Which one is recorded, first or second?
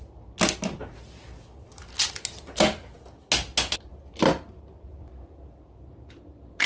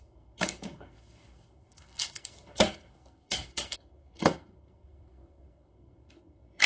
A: first